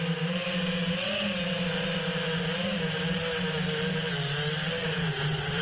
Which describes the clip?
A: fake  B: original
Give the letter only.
B